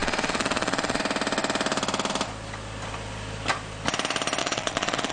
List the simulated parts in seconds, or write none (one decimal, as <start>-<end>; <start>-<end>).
0.0-1.0; 4.4-5.1